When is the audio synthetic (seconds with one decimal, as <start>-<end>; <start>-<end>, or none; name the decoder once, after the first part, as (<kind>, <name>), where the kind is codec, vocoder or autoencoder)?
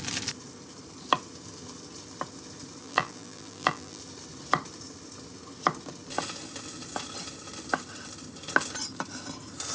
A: 2.8-4.0 (vocoder, BigVGAN v2)